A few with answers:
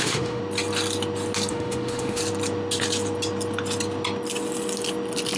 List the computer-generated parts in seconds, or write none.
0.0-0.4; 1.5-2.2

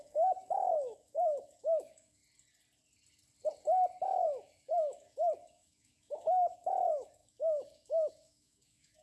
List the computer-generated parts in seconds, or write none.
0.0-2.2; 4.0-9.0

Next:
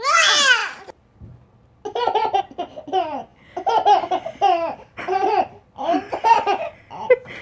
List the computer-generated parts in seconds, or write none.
none

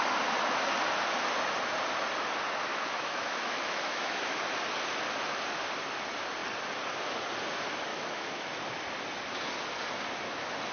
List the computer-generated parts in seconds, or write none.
2.7-4.4; 7.9-8.5

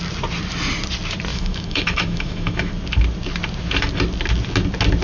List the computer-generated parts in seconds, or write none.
1.3-2.7

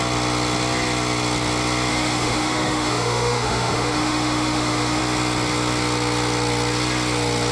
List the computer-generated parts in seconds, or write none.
1.9-5.0

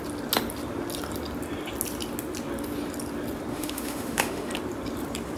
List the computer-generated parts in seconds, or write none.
3.5-4.5